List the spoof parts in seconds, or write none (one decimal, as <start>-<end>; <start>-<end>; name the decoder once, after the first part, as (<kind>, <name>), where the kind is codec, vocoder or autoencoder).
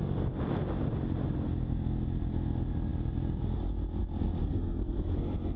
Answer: 4.4-5.6 (codec, SNAC)